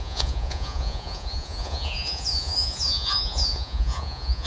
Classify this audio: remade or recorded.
remade